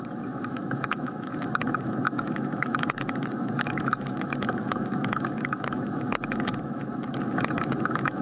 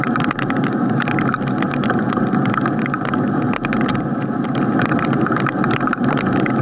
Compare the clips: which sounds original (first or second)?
second